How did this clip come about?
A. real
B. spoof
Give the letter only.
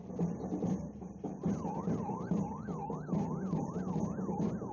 B